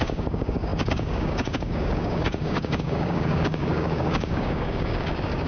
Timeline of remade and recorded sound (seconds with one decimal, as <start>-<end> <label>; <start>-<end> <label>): 0.0-5.5 remade